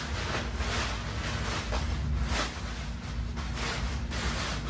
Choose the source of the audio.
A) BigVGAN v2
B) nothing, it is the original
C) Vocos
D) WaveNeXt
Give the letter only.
B